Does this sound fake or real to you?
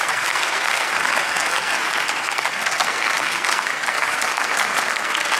fake